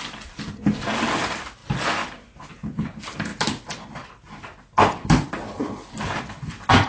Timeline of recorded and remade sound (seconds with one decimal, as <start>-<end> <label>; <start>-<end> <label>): 0.0-6.9 recorded